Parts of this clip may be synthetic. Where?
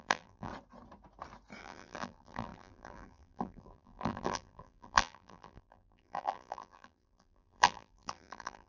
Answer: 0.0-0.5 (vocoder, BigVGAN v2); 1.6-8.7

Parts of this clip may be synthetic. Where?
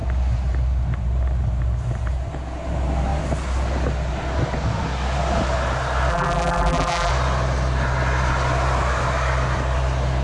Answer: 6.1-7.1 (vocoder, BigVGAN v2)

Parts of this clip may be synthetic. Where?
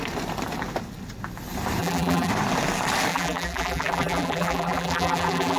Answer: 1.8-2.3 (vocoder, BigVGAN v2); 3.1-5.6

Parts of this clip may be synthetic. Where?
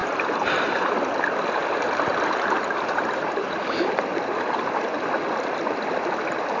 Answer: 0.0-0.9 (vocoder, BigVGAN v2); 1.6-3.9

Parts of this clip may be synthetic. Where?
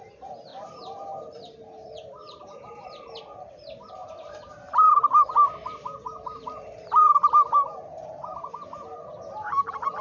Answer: 0.5-3.2 (vocoder, BigVGAN v2); 4.0-7.3